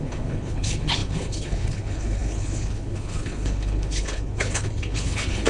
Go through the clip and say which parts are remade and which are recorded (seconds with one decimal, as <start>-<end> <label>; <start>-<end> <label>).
0.0-5.5 remade